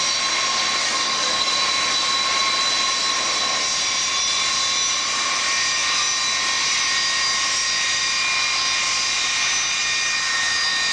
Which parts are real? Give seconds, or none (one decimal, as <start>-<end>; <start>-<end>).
0.0-0.8; 1.5-10.9